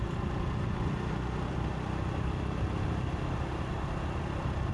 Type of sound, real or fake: real